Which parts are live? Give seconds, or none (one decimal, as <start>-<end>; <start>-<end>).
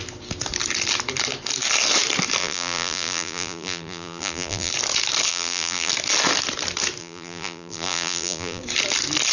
0.0-2.4; 4.7-5.3; 5.9-7.0; 8.6-9.3